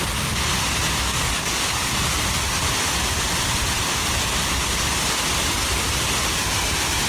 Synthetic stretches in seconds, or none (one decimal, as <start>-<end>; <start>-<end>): 1.1-1.9

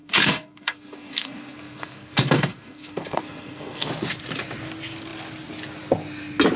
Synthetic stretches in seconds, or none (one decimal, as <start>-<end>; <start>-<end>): 0.0-3.9

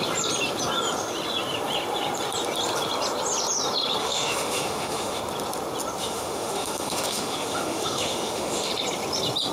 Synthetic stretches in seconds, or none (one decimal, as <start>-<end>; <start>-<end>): 4.0-5.2; 6.0-8.7

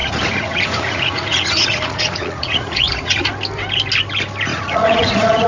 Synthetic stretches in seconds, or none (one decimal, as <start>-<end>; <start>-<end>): 0.0-3.3; 4.5-5.5

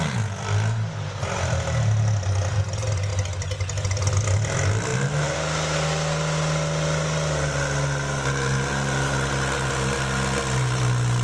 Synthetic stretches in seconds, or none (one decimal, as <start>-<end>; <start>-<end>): none

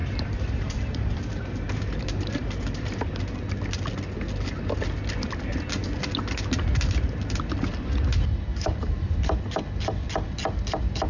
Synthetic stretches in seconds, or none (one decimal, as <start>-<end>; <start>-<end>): 0.0-3.0; 8.5-9.4

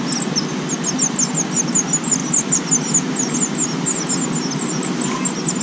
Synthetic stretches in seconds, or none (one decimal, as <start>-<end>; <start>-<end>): none